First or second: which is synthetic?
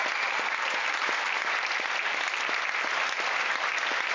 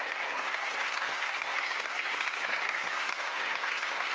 second